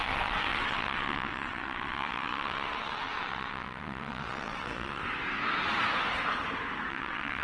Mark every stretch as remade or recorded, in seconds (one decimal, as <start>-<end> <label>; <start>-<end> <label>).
0.0-5.0 remade; 5.0-6.9 recorded; 6.9-7.4 remade